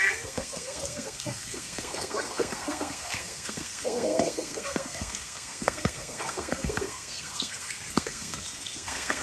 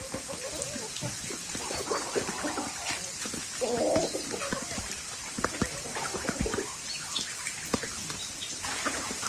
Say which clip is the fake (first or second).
first